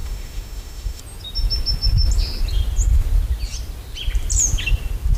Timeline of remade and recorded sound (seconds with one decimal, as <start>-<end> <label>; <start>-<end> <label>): 0.0-1.0 remade; 1.0-5.2 recorded